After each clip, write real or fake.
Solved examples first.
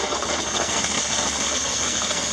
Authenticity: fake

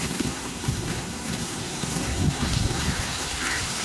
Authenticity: fake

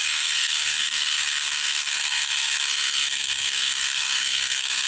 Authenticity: fake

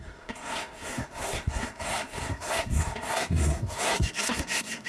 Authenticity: fake